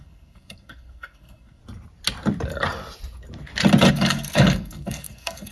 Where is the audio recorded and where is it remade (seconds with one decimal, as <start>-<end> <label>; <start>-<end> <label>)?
0.0-1.6 remade; 1.6-3.9 recorded; 3.9-5.5 remade

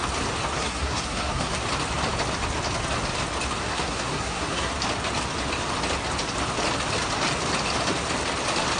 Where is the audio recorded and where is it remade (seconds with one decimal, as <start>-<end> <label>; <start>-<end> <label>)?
0.0-0.6 recorded; 0.6-1.5 remade; 1.5-3.6 recorded; 3.6-4.7 remade; 4.7-8.8 recorded

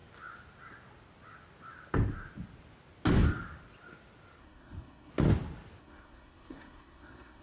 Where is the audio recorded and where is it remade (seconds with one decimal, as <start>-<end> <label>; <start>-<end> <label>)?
0.0-4.4 recorded; 4.4-5.1 remade; 5.1-5.8 recorded; 5.8-7.4 remade

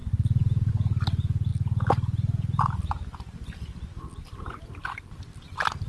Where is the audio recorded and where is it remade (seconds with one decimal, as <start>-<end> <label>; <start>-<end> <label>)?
0.0-5.9 recorded

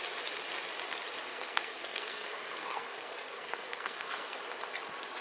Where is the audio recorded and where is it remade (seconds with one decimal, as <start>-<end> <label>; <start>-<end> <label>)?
0.0-1.3 recorded; 1.3-4.4 remade; 4.4-5.2 recorded

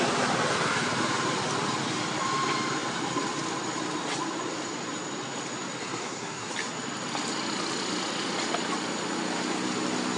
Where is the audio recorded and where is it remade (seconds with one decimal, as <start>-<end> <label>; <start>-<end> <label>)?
0.0-5.8 recorded; 5.8-6.5 remade; 6.5-10.2 recorded